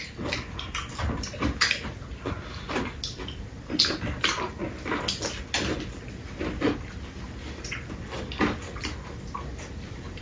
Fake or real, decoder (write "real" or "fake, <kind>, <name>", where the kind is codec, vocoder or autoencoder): real